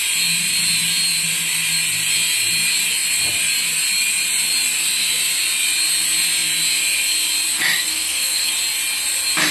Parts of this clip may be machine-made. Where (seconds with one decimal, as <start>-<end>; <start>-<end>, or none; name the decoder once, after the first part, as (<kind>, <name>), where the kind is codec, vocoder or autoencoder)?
7.9-8.5 (codec, SNAC)